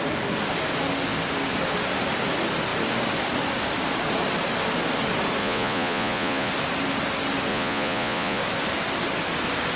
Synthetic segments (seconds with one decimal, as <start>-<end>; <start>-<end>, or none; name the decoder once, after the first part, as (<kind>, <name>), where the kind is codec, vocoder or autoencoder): 5.4-6.5 (vocoder, Vocos); 7.5-8.4